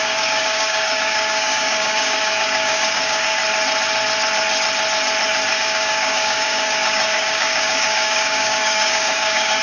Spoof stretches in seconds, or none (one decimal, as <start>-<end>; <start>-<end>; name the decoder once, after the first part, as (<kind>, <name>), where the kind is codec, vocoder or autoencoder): 0.0-3.4 (codec, DAC); 5.5-9.6